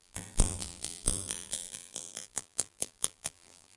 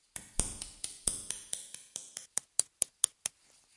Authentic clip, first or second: second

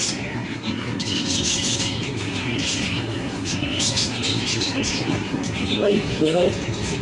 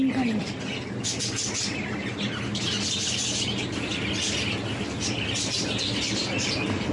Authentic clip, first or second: second